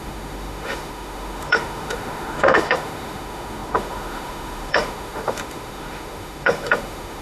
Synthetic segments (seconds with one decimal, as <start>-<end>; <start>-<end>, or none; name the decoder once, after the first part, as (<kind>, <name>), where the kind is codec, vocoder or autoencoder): 0.0-7.2 (autoencoder, DAC-VAE)